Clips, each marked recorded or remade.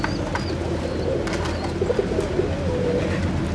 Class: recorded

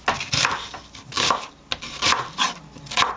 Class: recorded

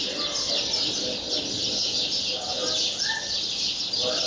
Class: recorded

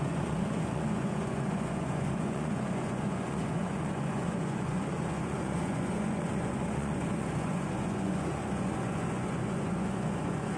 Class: remade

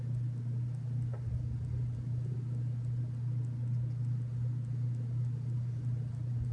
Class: recorded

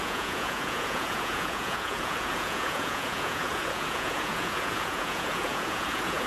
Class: remade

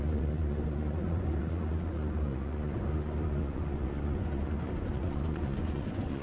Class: remade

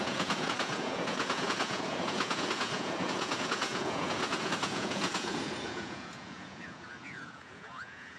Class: remade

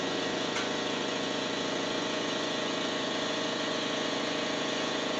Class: remade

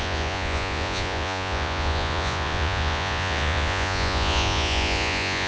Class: remade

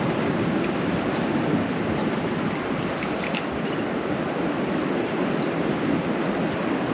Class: recorded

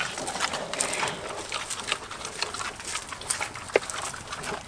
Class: recorded